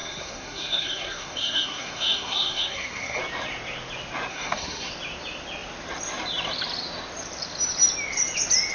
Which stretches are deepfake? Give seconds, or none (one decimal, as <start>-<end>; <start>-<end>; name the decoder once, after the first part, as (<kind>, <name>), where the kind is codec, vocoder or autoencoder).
0.0-3.2 (codec, SNAC); 4.3-4.9